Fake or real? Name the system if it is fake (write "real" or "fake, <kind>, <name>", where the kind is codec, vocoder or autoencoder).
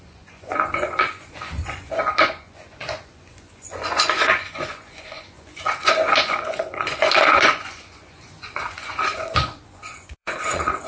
fake, vocoder, Vocos